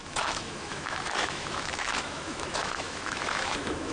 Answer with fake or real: fake